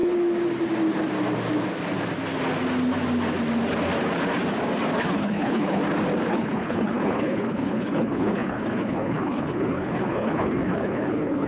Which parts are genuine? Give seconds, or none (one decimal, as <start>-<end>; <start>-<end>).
0.0-5.0; 5.8-6.3